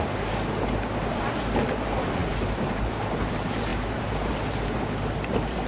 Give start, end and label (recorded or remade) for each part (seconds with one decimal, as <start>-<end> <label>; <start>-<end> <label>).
0.0-5.7 remade